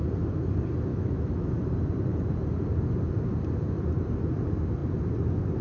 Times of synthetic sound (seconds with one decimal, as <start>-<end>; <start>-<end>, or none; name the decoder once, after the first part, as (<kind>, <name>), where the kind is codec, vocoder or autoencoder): 0.9-1.5 (autoencoder, DAC-VAE)